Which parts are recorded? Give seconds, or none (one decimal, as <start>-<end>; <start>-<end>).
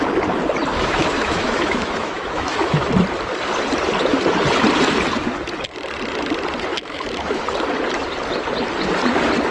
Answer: 0.0-0.7; 2.9-6.7; 7.4-9.5